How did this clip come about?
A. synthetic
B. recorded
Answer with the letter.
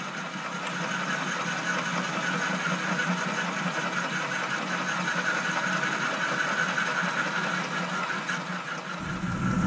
B